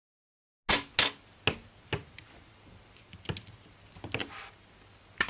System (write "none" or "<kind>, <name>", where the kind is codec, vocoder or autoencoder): none